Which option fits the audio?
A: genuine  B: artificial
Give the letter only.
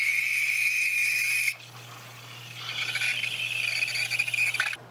A